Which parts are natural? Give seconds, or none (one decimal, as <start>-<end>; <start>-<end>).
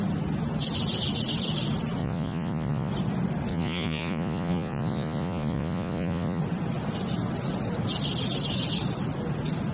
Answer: 0.0-2.0; 2.9-3.5; 6.4-9.7